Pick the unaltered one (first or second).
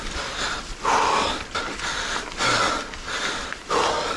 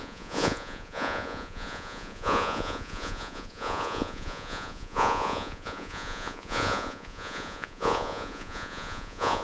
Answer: first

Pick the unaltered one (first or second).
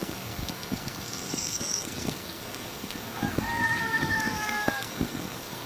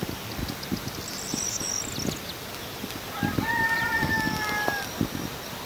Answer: second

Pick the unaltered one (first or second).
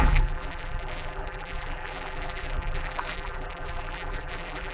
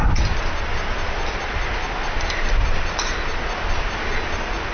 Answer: second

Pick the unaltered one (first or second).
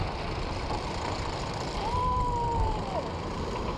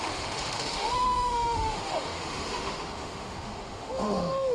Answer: first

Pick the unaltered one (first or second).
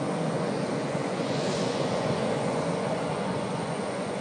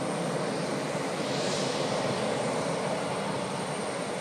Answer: second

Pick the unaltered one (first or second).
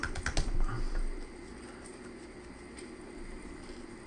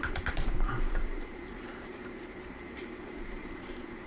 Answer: first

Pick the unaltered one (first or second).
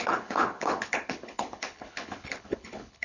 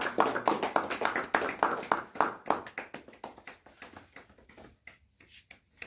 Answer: second